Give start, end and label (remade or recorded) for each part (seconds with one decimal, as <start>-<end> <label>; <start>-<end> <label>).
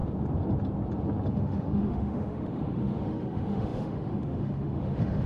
0.0-1.3 recorded; 1.3-5.3 remade